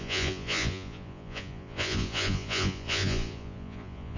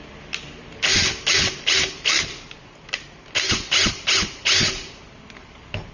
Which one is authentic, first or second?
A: second